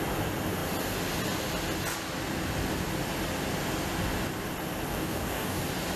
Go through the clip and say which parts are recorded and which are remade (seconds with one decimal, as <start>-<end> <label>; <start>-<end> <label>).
0.0-4.9 recorded; 4.9-5.6 remade; 5.6-6.0 recorded

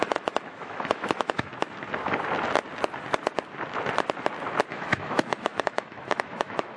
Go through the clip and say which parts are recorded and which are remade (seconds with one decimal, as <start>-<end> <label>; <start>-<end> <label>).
0.0-1.5 remade; 1.5-4.7 recorded; 4.7-6.8 remade

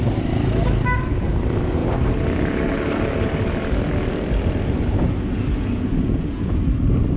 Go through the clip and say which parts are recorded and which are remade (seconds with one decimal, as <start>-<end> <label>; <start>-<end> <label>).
0.0-5.5 recorded; 5.5-6.6 remade; 6.6-7.2 recorded

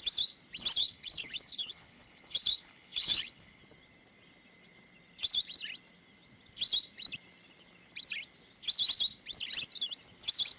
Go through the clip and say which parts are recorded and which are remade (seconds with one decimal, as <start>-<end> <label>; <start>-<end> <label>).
0.0-0.8 recorded; 0.8-3.6 remade; 3.6-10.6 recorded

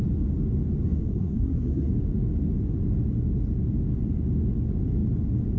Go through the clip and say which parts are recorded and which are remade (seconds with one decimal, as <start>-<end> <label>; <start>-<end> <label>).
0.0-0.9 recorded; 0.9-1.9 remade; 1.9-5.6 recorded

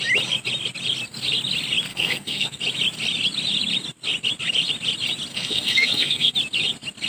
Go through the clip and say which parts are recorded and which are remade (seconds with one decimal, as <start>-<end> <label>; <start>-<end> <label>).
0.0-1.9 recorded; 1.9-2.6 remade; 2.6-5.3 recorded; 5.3-6.3 remade; 6.3-7.1 recorded

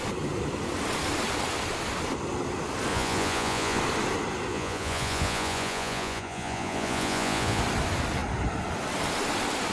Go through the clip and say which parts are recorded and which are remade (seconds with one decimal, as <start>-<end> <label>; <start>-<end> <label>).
0.0-2.9 recorded; 2.9-3.8 remade; 3.8-4.5 recorded; 4.5-7.6 remade; 7.6-9.7 recorded

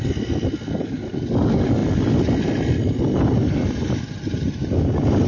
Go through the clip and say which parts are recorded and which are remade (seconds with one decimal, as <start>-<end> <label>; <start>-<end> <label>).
0.0-5.3 recorded